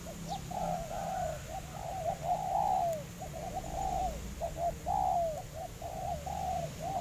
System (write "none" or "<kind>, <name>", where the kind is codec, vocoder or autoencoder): none